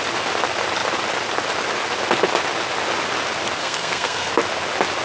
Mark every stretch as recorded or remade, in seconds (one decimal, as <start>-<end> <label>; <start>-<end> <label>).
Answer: 0.0-3.6 recorded; 3.6-4.3 remade; 4.3-5.0 recorded